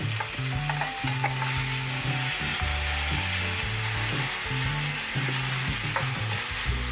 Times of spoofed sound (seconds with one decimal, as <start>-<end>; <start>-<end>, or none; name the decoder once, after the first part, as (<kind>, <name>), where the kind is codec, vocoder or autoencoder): none

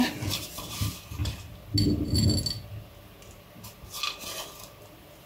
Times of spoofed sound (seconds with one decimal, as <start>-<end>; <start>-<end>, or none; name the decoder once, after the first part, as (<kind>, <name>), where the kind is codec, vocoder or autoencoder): none

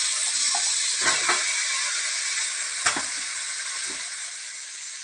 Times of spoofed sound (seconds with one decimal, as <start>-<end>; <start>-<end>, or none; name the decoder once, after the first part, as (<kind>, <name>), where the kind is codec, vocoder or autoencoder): none

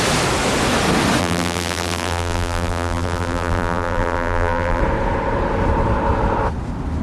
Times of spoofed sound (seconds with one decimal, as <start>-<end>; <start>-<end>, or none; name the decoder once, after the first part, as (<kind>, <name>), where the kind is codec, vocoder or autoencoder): 1.2-4.8 (vocoder, BigVGAN v2)

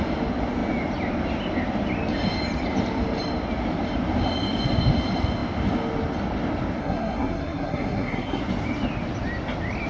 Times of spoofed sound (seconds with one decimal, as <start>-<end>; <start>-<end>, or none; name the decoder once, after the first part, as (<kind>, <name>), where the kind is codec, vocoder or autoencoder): 6.8-8.4 (codec, SNAC)

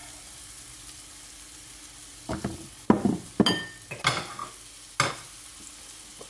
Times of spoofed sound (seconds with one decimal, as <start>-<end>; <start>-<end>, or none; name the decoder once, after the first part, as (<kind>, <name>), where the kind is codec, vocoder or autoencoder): 0.0-3.4 (vocoder, BigVGAN v2)

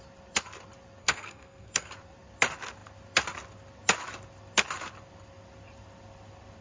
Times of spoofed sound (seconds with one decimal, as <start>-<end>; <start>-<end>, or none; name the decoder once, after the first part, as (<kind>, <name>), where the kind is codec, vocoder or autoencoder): 1.0-1.9 (codec, SNAC)